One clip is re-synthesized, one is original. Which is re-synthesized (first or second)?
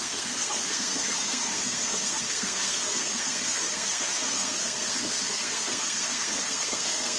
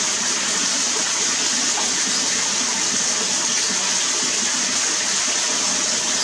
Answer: first